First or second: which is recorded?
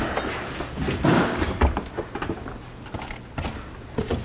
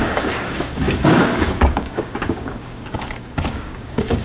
first